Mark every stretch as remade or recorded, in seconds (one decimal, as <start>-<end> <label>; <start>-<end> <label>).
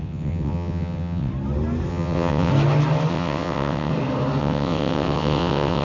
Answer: 0.0-1.3 remade; 1.3-1.9 recorded; 1.9-2.5 remade; 2.5-3.1 recorded; 3.1-3.9 remade; 3.9-4.4 recorded; 4.4-5.8 remade